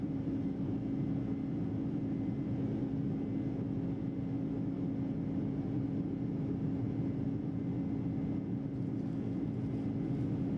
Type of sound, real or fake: real